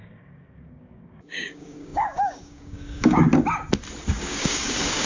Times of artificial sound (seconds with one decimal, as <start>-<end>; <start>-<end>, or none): 0.0-3.3; 4.2-5.1